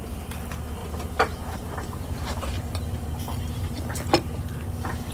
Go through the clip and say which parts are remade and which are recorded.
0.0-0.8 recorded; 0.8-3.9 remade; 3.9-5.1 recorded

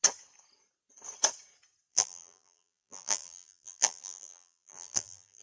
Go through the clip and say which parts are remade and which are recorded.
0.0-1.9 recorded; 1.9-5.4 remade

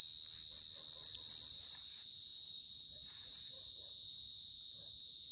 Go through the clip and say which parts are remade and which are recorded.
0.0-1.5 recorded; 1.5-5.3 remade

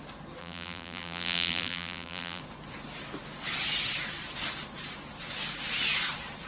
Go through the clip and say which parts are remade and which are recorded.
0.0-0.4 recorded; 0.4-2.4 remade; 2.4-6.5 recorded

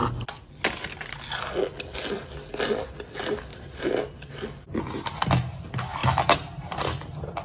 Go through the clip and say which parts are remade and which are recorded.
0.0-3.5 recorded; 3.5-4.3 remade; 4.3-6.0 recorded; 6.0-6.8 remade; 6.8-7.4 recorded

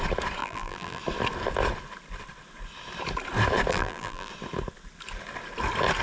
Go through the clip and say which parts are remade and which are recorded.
0.0-0.4 recorded; 0.4-1.0 remade; 1.0-3.7 recorded; 3.7-4.3 remade; 4.3-6.0 recorded

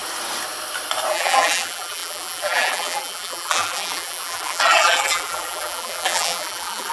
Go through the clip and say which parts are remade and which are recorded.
0.0-1.1 recorded; 1.1-6.9 remade

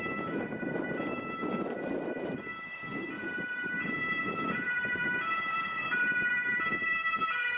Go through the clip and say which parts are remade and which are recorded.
0.0-2.5 recorded; 2.5-6.3 remade; 6.3-7.6 recorded